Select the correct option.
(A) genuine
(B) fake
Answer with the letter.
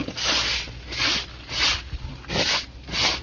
A